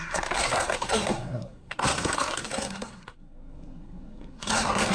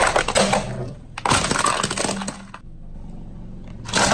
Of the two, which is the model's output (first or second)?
first